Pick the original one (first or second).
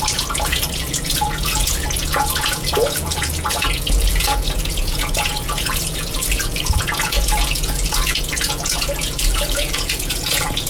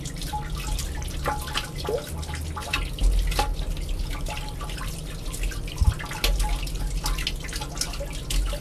second